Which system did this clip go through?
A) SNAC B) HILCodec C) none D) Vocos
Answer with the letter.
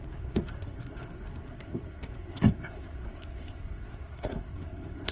A